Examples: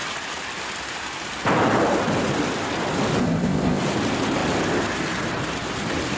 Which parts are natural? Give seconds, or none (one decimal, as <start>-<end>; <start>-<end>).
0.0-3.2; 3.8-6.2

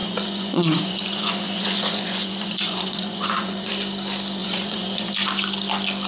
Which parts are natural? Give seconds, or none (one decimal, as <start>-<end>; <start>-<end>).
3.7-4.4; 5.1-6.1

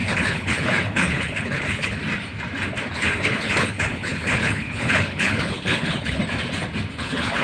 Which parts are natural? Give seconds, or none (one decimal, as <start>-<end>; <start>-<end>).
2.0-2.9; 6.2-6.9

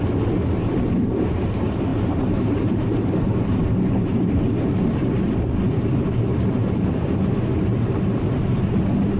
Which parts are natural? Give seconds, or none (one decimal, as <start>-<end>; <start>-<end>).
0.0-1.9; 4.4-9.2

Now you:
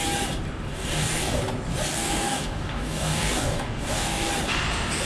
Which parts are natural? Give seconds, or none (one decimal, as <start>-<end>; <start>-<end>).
0.0-0.7; 1.4-1.9; 4.3-5.0

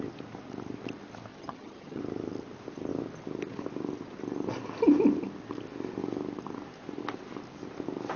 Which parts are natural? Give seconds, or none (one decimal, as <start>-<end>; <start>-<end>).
0.0-1.3; 2.0-8.2

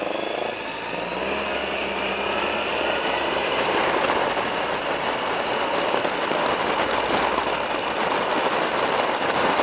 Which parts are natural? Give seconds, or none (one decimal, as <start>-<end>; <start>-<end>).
0.0-1.6; 4.0-9.6